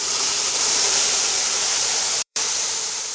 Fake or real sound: fake